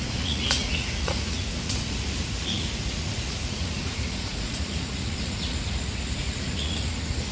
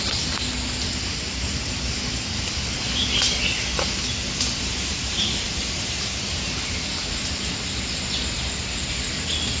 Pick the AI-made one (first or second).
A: first